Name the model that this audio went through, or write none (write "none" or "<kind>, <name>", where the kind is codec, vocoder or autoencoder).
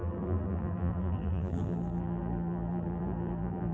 vocoder, BigVGAN v2